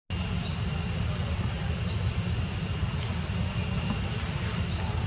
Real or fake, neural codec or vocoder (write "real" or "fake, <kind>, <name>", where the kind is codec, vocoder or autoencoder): real